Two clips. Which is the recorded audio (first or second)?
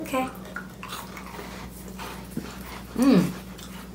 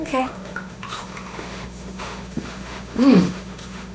first